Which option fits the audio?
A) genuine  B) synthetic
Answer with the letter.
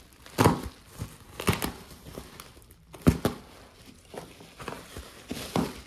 A